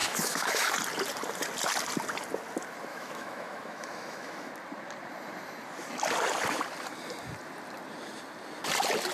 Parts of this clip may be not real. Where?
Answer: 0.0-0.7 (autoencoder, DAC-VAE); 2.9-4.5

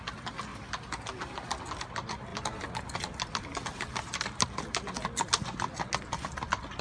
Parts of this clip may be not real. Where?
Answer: 0.5-1.0 (vocoder, BigVGAN v2)

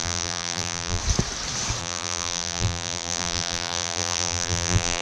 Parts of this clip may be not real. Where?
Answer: 0.0-1.0 (vocoder, BigVGAN v2); 1.8-5.0

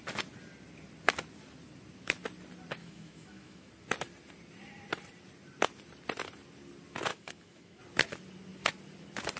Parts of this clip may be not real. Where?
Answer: 2.8-3.7 (autoencoder, DAC-VAE); 7.1-7.8

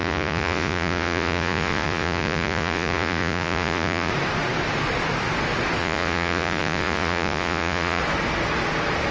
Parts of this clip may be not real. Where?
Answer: 0.0-4.1 (vocoder, Vocos); 5.8-8.0

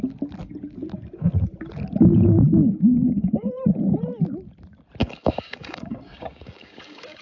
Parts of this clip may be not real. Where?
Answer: 2.6-3.5 (codec, DAC); 5.0-7.2